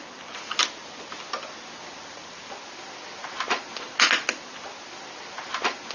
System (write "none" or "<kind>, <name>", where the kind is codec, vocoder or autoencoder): none